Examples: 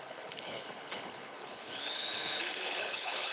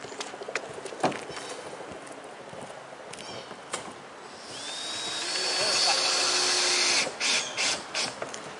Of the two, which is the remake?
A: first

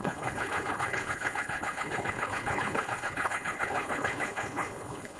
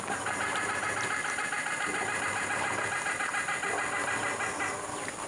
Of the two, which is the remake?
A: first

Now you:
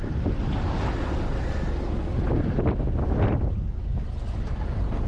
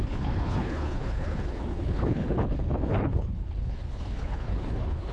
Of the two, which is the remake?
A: second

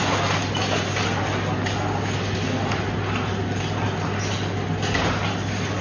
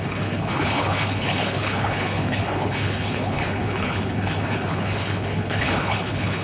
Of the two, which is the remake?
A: second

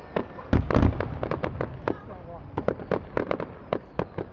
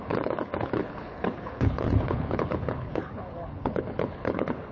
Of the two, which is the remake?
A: second